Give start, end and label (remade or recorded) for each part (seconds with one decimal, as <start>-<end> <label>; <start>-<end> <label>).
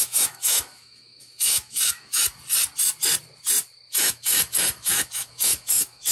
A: 0.0-2.2 remade; 2.2-3.9 recorded; 3.9-6.1 remade